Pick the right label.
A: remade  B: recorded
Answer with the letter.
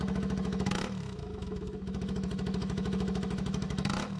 A